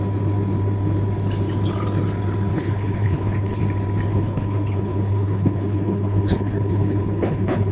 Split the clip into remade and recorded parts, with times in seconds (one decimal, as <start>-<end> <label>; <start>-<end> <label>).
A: 0.0-2.5 recorded; 2.5-3.6 remade; 3.6-4.1 recorded; 4.1-7.7 remade